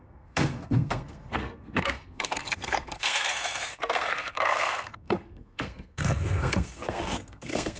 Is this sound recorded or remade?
remade